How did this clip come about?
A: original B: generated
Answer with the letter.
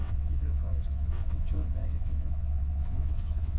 B